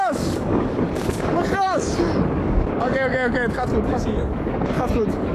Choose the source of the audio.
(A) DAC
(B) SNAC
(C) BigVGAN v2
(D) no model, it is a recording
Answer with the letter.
A